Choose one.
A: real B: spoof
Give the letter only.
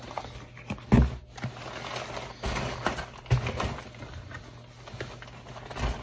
A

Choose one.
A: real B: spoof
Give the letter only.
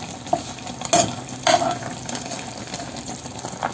A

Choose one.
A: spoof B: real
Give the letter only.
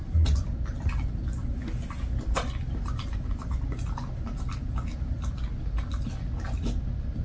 B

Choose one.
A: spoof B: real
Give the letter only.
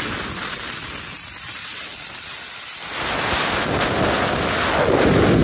B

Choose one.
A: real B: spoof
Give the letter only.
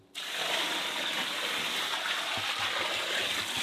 A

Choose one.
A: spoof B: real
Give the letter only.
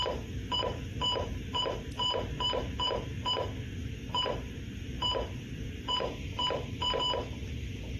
A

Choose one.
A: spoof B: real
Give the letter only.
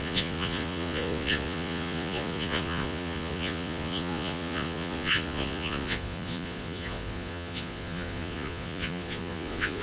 A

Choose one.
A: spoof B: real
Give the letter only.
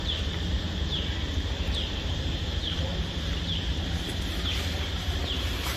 A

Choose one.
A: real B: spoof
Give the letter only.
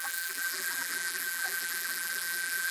B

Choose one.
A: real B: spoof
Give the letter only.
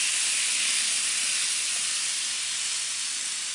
A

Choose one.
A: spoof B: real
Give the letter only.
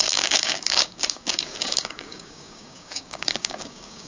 A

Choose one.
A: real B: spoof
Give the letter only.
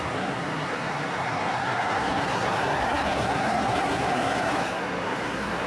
B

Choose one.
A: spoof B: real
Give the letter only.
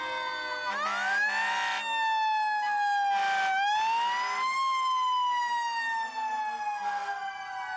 B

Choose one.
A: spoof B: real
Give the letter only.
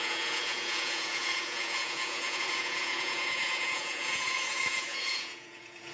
A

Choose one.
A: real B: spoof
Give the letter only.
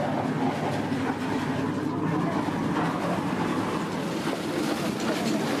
A